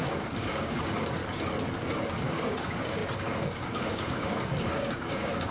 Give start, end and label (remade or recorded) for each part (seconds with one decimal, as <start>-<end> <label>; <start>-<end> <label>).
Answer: 0.0-1.2 remade; 1.2-2.1 recorded; 2.1-5.5 remade